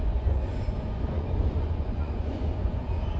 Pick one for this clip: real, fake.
fake